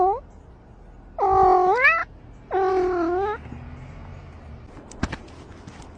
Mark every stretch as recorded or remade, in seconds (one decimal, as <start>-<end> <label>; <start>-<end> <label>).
0.0-6.0 recorded